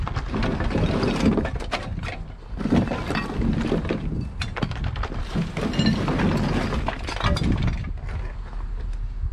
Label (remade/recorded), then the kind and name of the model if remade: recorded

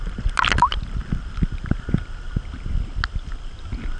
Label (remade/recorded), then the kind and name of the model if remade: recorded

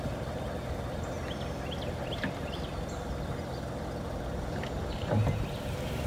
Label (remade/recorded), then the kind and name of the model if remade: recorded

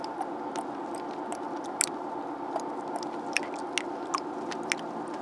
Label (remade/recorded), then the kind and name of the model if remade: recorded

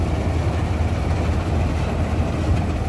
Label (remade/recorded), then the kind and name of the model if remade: recorded